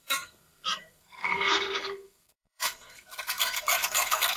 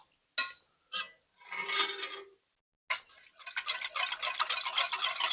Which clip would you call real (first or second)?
second